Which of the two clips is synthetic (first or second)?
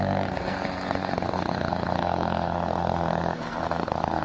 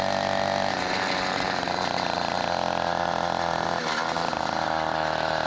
first